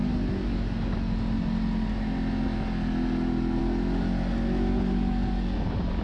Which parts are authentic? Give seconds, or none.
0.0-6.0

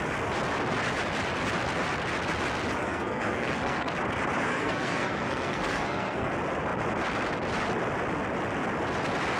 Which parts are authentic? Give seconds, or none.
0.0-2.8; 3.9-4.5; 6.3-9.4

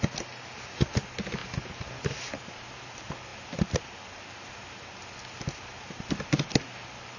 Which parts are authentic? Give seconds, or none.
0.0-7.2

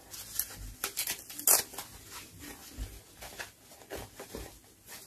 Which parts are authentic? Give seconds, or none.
0.0-5.1

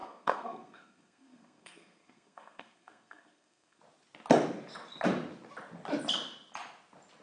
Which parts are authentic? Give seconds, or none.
3.8-7.2

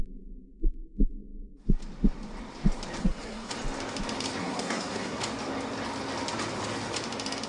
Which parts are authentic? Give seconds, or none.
0.0-3.0; 3.5-4.4; 5.2-7.5